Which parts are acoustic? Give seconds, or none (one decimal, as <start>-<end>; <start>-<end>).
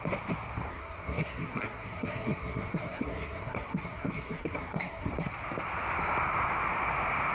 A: 0.0-0.7; 5.1-7.3